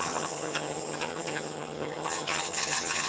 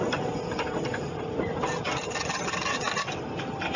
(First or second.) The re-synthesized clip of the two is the first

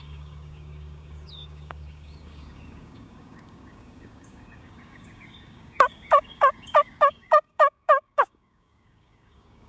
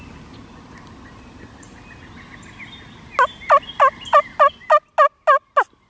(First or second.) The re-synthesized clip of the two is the first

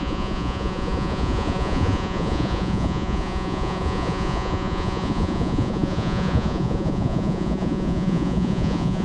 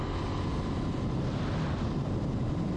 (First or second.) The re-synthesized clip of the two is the first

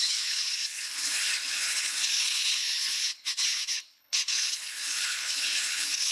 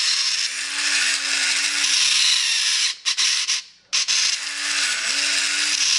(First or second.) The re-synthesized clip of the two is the first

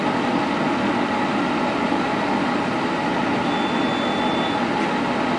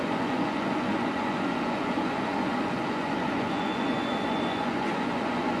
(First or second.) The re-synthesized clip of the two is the second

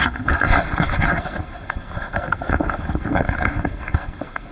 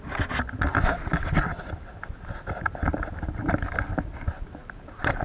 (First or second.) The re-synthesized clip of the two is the first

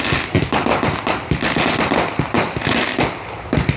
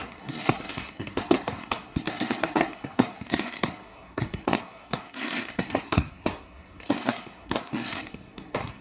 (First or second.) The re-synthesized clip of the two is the second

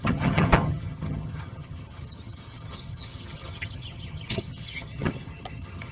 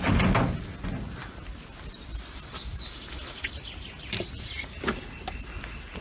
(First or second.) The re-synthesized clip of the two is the first